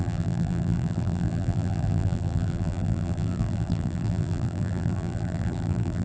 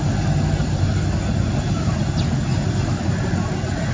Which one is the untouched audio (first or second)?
second